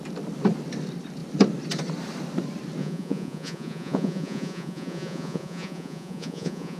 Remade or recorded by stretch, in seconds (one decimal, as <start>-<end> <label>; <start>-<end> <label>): 0.0-2.8 recorded; 2.8-6.8 remade